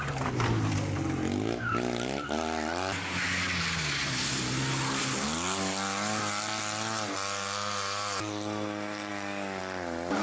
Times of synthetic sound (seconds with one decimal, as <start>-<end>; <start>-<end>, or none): none